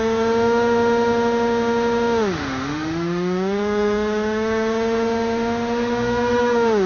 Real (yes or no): no